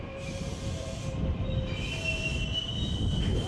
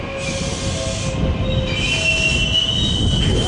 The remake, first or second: first